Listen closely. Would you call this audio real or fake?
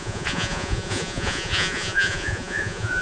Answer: fake